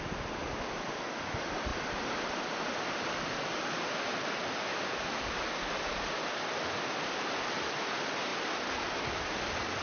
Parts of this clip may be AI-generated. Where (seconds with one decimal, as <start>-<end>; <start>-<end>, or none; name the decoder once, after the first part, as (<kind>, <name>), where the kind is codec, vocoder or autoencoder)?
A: none